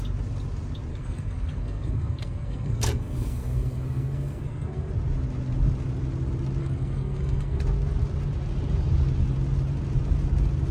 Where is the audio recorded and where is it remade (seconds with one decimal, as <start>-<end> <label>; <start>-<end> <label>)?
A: 0.0-0.9 recorded; 0.9-4.9 remade; 4.9-6.6 recorded; 6.6-7.6 remade; 7.6-10.7 recorded